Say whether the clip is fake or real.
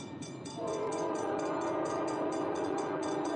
fake